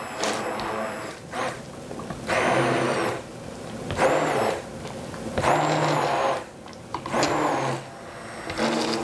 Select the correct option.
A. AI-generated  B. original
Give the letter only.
B